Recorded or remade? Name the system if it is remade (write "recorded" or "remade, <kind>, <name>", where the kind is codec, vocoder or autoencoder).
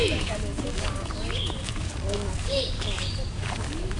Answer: remade, codec, DAC